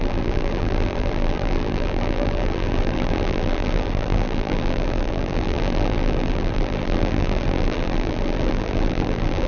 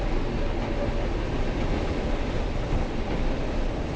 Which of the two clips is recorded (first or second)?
second